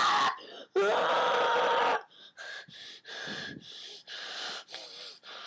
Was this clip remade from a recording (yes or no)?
no